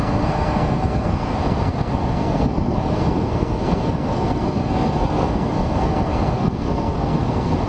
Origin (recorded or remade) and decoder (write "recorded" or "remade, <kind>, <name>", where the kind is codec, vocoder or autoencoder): remade, codec, SNAC